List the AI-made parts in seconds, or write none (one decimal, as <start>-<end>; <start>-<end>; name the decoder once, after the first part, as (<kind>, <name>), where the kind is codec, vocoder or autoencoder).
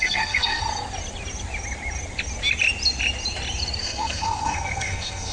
0.0-0.6 (codec, SNAC); 3.8-5.3